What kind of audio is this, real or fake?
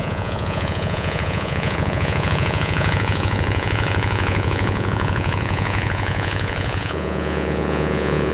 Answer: fake